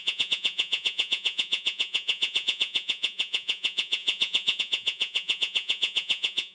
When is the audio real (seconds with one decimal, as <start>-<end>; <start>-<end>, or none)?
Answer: none